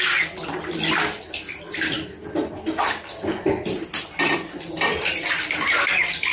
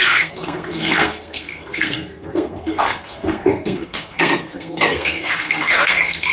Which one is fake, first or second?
second